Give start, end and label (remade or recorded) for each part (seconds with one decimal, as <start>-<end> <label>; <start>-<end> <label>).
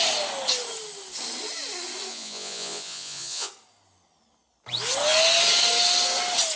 0.0-2.1 recorded; 2.1-3.5 remade; 3.5-6.6 recorded